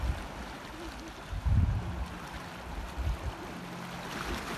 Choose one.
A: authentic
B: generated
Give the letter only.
A